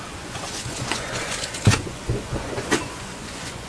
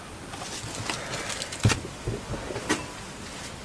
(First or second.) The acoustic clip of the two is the second